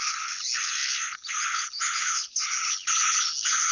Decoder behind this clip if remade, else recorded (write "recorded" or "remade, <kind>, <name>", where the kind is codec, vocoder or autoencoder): remade, codec, HILCodec